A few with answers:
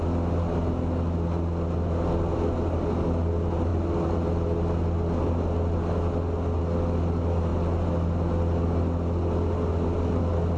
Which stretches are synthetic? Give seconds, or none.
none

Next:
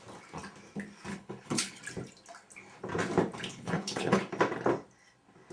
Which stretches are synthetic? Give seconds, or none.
1.1-1.8 (codec, HILCodec); 3.5-4.2

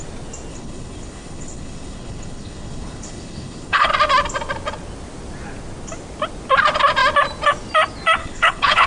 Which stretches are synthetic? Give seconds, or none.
0.5-3.9 (codec, HILCodec); 8.2-8.9

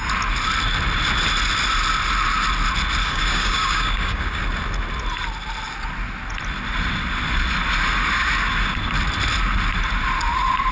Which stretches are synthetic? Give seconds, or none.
3.0-4.4 (codec, DAC)

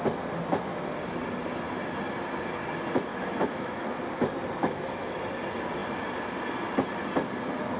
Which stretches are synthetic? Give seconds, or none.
3.1-4.0 (autoencoder, DAC-VAE); 4.6-5.2

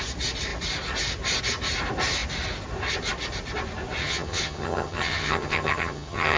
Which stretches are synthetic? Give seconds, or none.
4.0-6.4 (vocoder, HiFi-GAN)